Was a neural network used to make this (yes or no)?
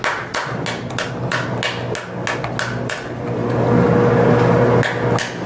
no